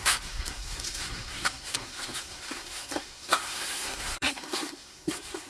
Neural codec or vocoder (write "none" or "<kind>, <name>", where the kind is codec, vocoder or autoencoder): codec, SNAC